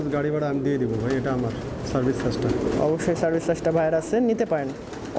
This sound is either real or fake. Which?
real